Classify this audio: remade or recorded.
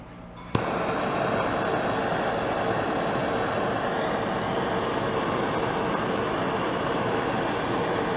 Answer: recorded